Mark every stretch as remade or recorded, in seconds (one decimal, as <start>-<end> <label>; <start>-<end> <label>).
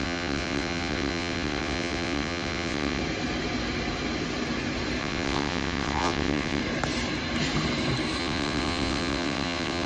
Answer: 0.0-3.0 remade; 3.0-5.0 recorded; 5.0-6.6 remade; 6.6-8.2 recorded; 8.2-9.9 remade